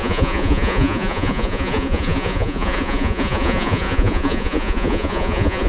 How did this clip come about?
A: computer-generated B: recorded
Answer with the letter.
A